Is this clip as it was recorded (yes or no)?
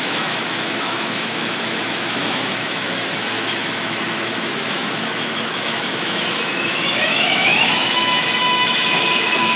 no